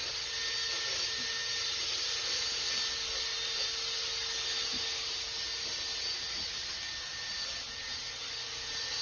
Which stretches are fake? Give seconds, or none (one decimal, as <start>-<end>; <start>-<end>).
none